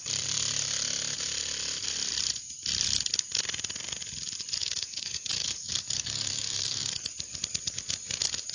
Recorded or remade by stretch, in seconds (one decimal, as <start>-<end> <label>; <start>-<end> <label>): 0.0-4.6 recorded; 4.6-7.1 remade; 7.1-8.5 recorded